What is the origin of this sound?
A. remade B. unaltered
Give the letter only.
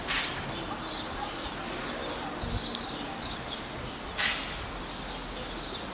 B